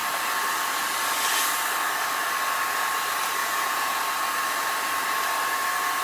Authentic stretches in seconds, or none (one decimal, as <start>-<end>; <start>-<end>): 0.0-3.4; 4.0-6.0